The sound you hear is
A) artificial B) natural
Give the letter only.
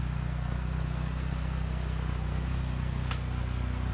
A